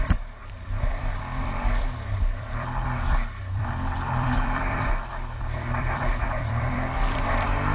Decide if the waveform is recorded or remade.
remade